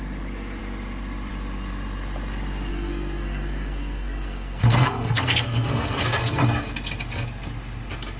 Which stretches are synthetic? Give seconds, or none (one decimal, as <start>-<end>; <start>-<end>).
2.7-6.6